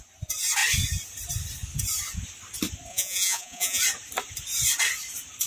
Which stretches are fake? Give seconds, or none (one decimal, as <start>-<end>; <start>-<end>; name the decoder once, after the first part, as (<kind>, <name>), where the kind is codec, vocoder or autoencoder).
2.9-3.8 (vocoder, Vocos)